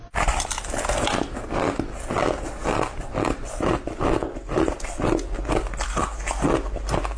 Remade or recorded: recorded